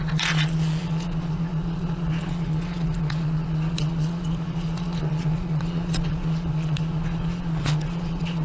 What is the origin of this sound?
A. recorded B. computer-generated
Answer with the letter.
B